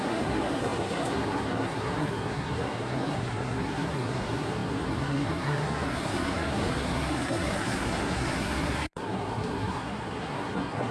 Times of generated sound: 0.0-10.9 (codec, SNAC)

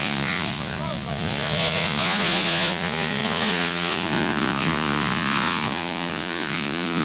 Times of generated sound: 0.0-7.0 (vocoder, Vocos)

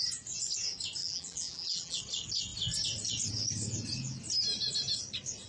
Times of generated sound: 1.0-2.0 (vocoder, BigVGAN v2)

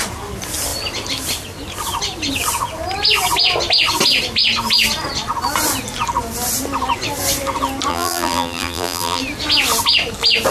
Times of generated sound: 7.9-9.2 (vocoder, BigVGAN v2)